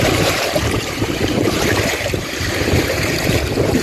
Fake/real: fake